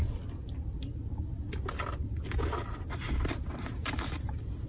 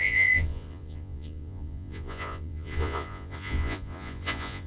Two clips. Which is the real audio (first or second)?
first